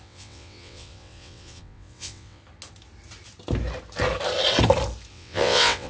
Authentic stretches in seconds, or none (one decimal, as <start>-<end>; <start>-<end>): 2.4-5.1

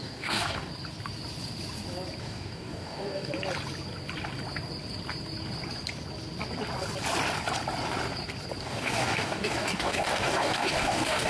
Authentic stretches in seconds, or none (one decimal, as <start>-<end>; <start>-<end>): 0.7-2.2; 3.3-8.6

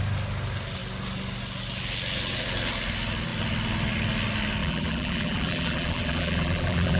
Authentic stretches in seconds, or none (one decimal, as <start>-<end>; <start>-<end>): 0.0-4.6

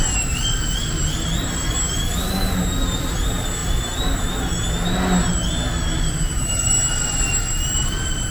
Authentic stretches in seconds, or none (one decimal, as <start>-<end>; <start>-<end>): 0.0-8.3

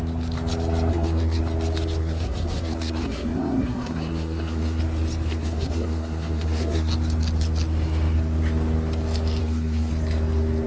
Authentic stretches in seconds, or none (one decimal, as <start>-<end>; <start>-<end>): 0.0-0.9; 1.4-2.0; 4.8-5.3; 6.9-9.4; 9.9-10.7

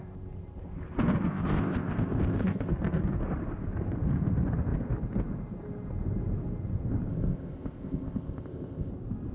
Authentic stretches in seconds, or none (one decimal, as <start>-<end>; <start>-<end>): 0.0-1.3; 2.7-7.1; 8.9-9.3